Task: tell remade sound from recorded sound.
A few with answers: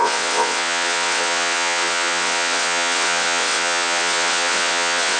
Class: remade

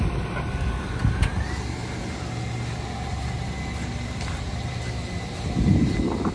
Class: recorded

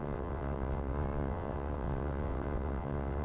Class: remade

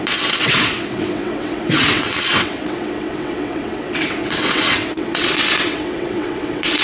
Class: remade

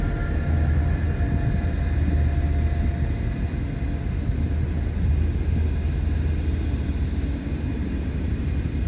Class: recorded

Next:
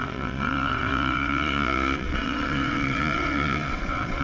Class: remade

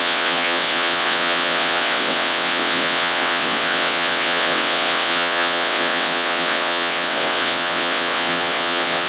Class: remade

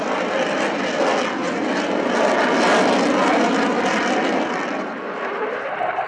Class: recorded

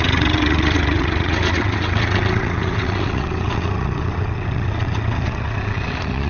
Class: remade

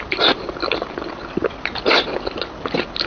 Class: recorded